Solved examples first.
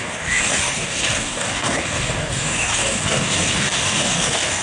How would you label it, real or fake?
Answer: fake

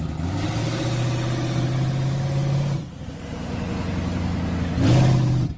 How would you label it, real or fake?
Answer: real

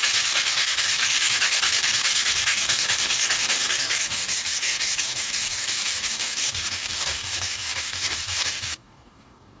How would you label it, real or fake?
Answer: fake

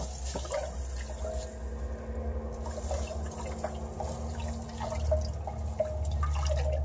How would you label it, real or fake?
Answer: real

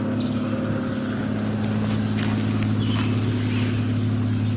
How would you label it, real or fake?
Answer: real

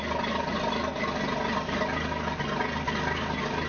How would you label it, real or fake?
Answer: real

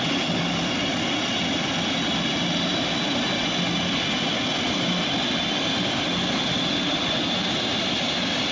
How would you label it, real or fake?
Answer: real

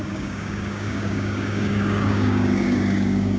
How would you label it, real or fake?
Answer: fake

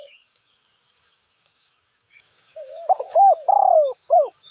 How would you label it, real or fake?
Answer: fake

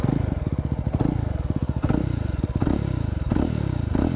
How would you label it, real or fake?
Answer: real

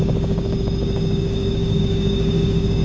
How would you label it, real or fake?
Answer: fake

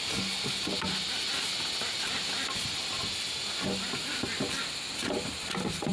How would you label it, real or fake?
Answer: real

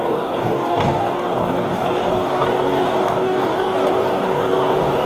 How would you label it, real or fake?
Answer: fake